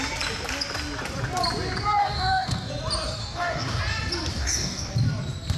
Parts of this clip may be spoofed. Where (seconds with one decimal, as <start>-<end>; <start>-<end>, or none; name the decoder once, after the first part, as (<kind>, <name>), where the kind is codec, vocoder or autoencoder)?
2.0-2.7 (codec, DAC); 3.2-3.8; 4.3-4.9